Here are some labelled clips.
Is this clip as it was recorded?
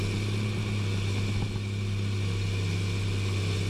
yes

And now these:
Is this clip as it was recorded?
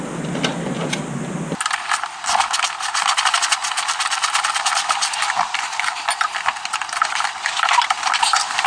yes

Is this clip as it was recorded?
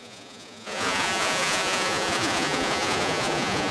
no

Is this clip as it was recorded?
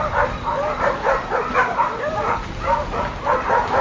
yes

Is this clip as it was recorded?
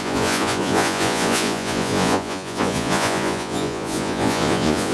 no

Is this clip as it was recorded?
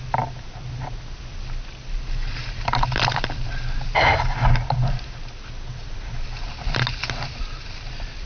yes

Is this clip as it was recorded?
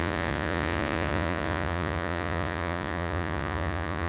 no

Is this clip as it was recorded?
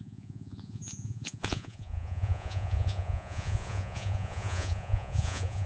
no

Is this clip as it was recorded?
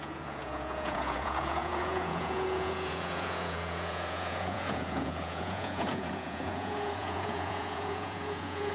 no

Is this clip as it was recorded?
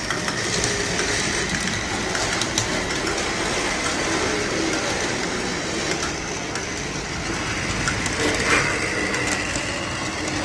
yes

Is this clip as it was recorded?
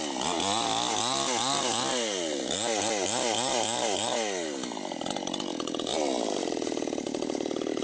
yes